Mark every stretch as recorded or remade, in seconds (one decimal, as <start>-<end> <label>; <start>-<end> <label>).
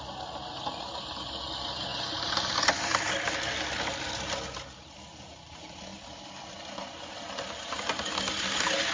0.0-8.9 recorded